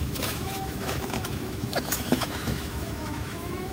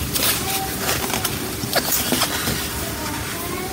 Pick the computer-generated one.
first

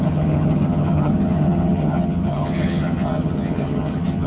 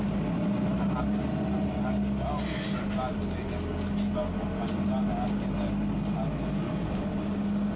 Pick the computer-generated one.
first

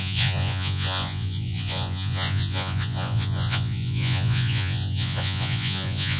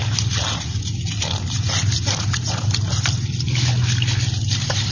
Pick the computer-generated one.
first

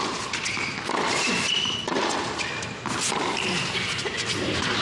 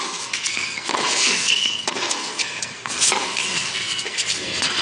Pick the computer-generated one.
second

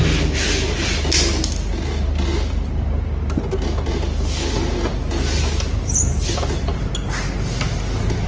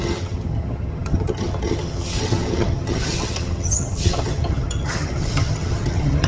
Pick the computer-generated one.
second